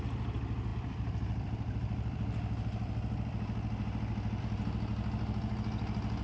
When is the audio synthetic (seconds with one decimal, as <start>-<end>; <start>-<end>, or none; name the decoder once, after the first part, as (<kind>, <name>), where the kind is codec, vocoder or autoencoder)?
0.0-4.9 (vocoder, BigVGAN v2)